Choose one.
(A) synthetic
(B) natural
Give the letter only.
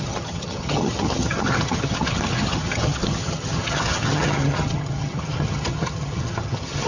A